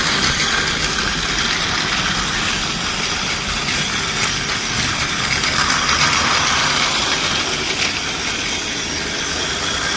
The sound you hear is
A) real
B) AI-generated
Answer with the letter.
A